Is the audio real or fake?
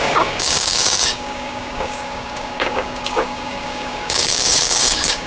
fake